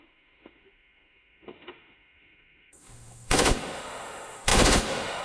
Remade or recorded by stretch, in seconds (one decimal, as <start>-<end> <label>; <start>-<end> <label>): 0.0-5.2 remade

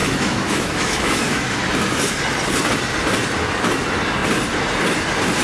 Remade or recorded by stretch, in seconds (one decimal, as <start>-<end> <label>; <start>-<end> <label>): 0.0-1.6 remade; 1.6-5.4 recorded

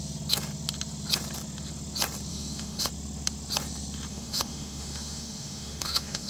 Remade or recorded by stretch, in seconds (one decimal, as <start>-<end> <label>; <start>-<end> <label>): 0.0-2.3 recorded; 2.3-2.9 remade; 2.9-4.1 recorded; 4.1-6.3 remade

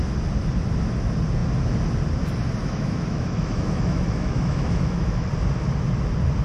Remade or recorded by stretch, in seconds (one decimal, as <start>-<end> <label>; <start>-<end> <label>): 0.0-2.6 recorded; 2.6-5.3 remade; 5.3-6.4 recorded

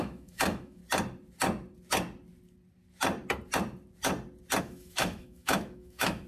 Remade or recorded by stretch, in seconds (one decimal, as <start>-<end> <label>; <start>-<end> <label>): 0.0-0.8 remade; 0.8-4.6 recorded; 4.6-6.3 remade

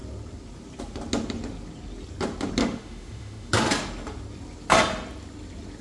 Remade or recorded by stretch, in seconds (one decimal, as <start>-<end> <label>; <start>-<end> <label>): 0.0-2.6 recorded; 2.6-3.5 remade; 3.5-5.8 recorded